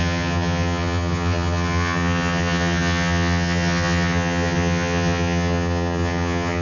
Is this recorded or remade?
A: remade